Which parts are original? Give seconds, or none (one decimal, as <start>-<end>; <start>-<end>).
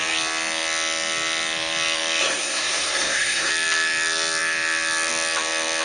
0.0-2.2; 3.5-5.8